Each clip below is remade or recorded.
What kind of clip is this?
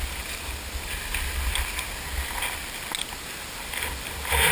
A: recorded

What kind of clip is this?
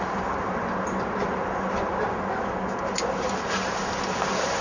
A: recorded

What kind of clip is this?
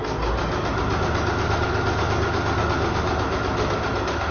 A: recorded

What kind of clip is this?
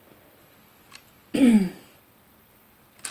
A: remade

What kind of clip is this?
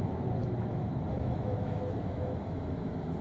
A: remade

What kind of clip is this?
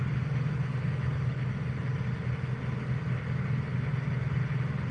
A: recorded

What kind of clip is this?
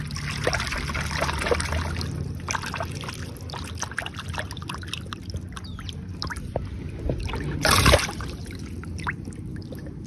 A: recorded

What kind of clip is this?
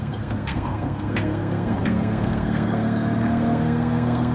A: remade